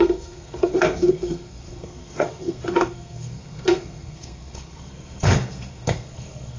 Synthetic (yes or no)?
yes